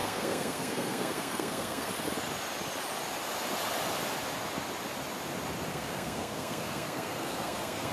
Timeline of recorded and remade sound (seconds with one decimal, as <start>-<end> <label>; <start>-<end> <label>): 0.0-1.9 remade; 1.9-5.7 recorded; 5.7-7.9 remade